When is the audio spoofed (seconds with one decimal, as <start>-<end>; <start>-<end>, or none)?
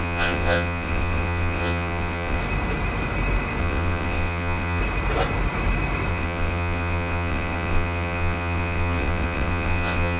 0.0-2.4; 3.6-4.8; 6.1-10.2